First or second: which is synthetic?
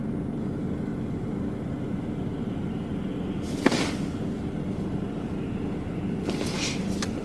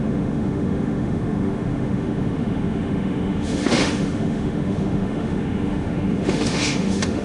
second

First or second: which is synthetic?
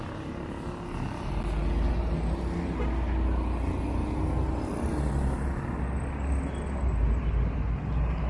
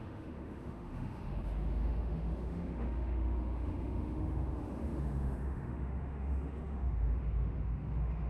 second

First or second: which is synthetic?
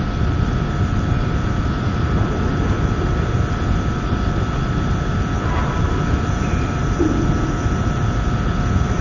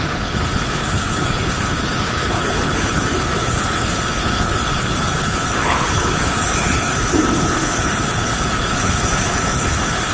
second